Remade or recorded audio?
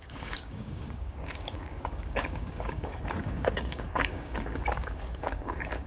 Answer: remade